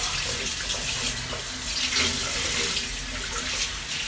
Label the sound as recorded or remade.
recorded